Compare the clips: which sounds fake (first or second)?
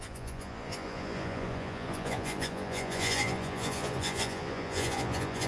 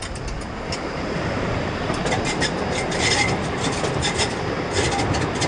first